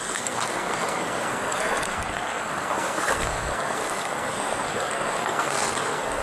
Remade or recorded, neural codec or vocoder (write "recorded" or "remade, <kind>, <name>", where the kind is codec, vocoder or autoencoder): remade, codec, SNAC